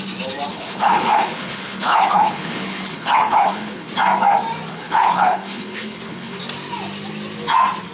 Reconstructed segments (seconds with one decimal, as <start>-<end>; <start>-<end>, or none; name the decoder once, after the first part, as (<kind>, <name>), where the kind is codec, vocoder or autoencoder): 0.5-3.9 (codec, HILCodec); 4.7-6.4

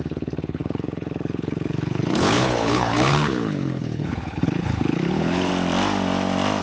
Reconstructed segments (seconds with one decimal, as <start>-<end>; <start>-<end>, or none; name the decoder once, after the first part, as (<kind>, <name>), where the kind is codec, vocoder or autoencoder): 0.0-5.5 (codec, HILCodec)

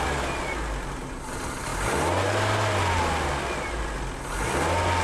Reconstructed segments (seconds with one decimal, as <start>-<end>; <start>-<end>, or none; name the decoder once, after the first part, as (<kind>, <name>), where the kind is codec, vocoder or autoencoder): none

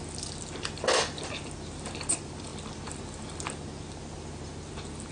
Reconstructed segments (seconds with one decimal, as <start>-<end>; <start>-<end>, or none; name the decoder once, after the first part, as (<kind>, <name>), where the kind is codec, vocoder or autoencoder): none

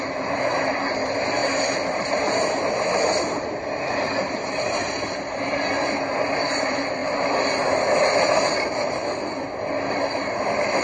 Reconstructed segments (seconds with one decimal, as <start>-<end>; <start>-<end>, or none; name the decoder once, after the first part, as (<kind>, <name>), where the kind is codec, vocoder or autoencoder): none